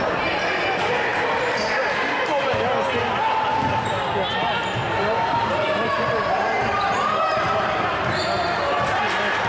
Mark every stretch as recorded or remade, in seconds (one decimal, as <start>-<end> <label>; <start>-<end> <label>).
0.0-4.8 recorded; 4.8-8.4 remade; 8.4-9.5 recorded